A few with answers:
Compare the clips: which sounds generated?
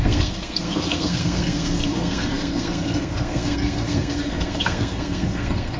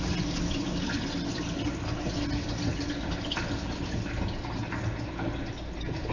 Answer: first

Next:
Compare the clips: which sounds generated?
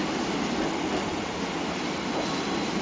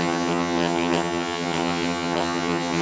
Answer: second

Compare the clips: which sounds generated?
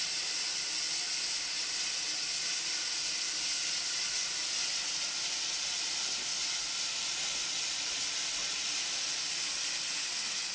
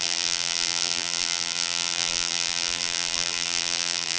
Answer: second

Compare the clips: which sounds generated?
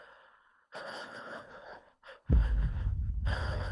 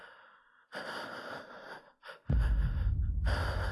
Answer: first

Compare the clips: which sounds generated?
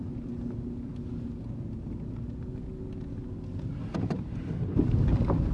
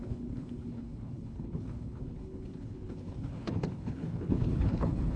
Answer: second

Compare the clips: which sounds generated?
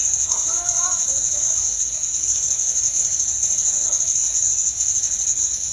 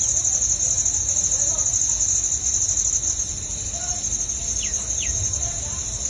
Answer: first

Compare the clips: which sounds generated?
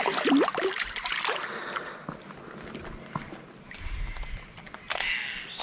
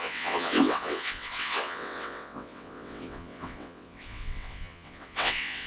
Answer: second